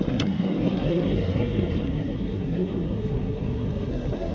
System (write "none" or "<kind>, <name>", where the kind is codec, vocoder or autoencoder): codec, SNAC